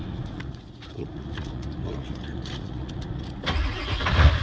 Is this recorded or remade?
remade